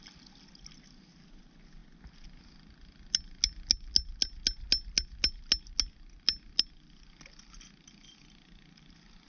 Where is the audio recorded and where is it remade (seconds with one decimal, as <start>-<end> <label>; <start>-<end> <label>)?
0.0-9.3 recorded